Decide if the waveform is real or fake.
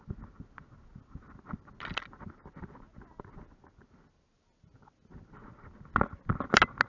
real